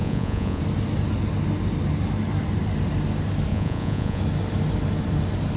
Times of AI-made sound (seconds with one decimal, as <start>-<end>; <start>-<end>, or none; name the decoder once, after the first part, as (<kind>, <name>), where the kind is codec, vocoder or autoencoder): 0.0-0.6 (vocoder, Vocos); 3.5-4.2